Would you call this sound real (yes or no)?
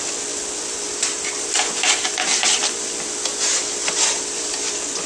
yes